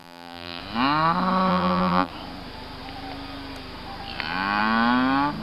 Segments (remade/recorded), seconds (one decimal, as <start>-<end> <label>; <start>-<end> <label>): 0.0-0.6 remade; 0.6-1.5 recorded; 1.5-2.1 remade; 2.1-5.4 recorded